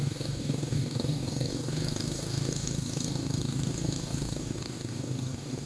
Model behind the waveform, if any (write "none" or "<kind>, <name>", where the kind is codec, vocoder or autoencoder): codec, DAC